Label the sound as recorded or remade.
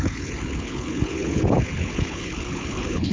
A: remade